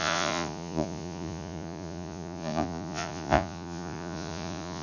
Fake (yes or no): yes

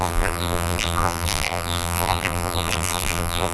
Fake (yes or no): yes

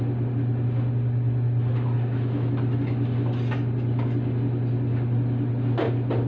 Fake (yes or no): no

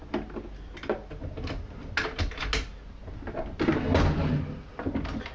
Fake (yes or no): no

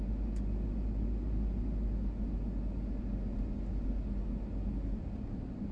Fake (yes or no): no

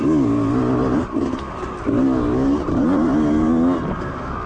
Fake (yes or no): no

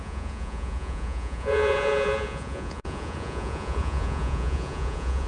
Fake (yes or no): yes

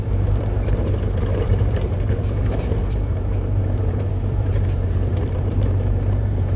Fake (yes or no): yes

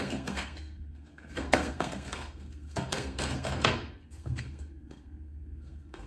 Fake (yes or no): yes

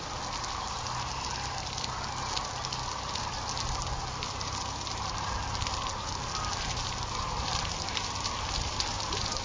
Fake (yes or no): no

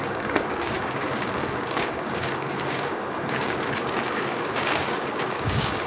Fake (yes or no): yes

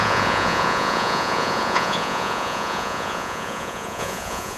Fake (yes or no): yes